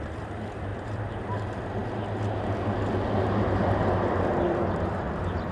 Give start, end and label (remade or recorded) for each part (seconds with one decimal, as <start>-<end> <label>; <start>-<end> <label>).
0.0-1.8 remade; 1.8-3.6 recorded; 3.6-5.5 remade